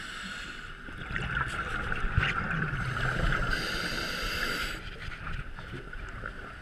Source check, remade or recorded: recorded